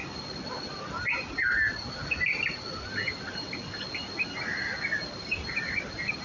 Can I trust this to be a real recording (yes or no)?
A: yes